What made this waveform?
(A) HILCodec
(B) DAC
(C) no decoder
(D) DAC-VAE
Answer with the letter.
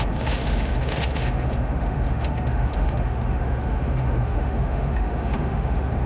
D